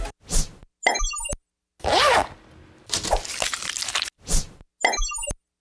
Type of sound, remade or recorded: recorded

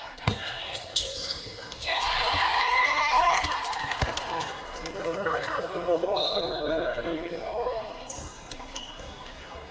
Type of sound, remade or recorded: remade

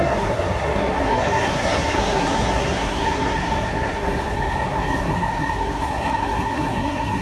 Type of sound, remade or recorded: remade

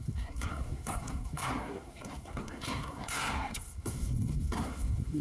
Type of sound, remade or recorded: remade